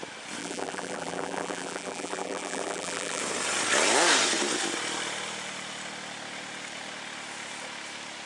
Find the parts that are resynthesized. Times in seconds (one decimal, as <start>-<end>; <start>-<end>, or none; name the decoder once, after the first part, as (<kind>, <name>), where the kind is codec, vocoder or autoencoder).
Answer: 0.4-3.2 (vocoder, BigVGAN v2)